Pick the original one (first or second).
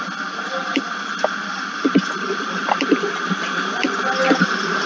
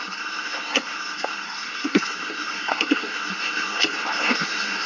first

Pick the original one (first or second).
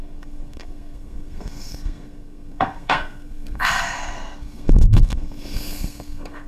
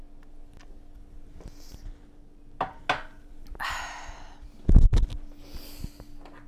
second